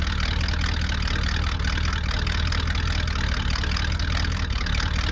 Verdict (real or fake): real